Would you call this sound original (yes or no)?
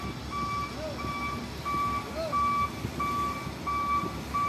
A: yes